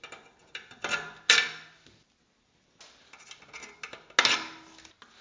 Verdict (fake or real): real